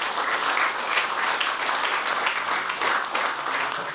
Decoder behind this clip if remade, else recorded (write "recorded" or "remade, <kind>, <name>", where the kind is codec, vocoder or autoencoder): recorded